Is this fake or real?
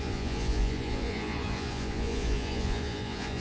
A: fake